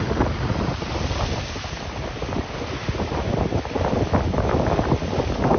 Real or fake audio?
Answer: real